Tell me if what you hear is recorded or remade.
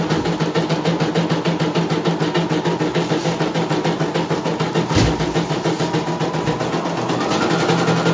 recorded